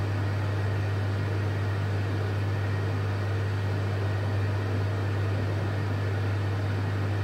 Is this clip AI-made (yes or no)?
no